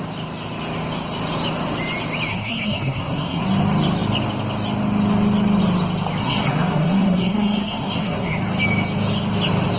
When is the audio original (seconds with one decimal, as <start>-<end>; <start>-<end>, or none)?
0.0-2.3; 3.4-6.2; 8.4-9.8